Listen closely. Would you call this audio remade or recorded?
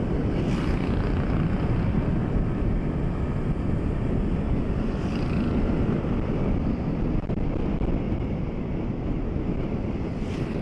recorded